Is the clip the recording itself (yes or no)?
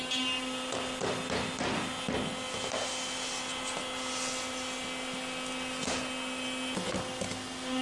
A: yes